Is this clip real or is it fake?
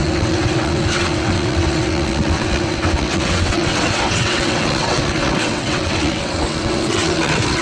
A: fake